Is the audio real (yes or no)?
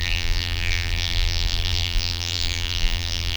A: no